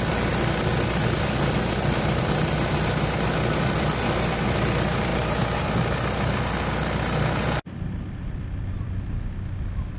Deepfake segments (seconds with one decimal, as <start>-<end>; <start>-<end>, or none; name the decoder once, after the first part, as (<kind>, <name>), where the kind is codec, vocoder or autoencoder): none

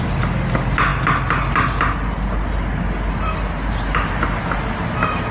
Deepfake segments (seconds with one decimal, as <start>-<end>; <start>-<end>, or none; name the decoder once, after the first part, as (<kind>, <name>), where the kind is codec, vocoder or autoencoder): none

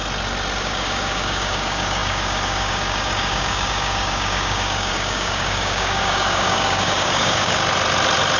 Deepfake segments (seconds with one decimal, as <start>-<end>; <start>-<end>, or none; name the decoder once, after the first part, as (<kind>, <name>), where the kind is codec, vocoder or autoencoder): 0.6-7.6 (codec, DAC)

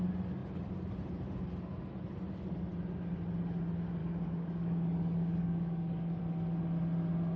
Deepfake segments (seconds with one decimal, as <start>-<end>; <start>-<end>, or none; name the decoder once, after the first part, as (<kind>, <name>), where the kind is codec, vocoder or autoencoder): 4.0-6.2 (codec, DAC)

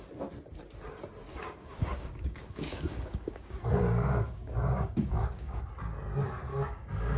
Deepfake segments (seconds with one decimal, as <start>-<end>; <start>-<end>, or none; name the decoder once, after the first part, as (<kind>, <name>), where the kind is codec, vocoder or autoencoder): 1.3-5.6 (codec, DAC); 6.5-7.2

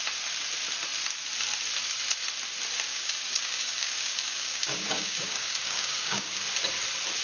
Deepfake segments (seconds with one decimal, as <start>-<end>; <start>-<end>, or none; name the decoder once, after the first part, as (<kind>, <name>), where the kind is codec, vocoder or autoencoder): 2.9-6.4 (codec, DAC)

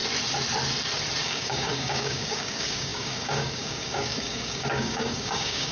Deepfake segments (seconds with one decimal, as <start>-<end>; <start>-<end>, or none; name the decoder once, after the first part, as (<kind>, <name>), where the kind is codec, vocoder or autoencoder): 1.2-5.7 (codec, DAC)

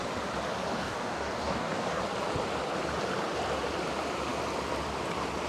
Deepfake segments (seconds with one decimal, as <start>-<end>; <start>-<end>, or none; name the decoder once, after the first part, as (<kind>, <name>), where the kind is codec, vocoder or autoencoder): 0.7-2.0 (codec, DAC)